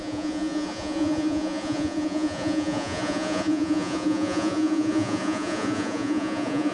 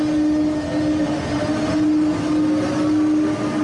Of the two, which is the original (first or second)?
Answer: second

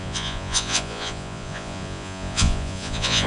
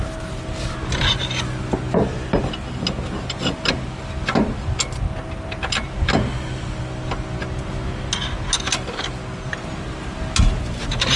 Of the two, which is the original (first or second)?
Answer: second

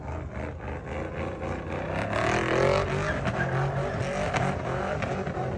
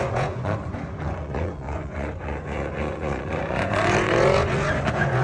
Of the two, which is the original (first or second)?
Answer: first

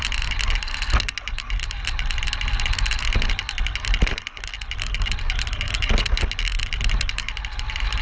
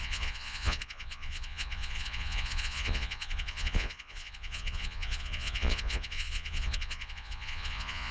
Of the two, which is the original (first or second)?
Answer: first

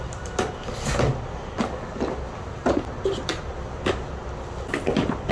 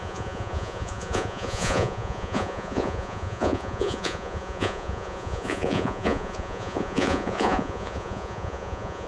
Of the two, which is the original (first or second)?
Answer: first